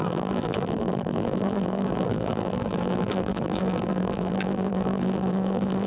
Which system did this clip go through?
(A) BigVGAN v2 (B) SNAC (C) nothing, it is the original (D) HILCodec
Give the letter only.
A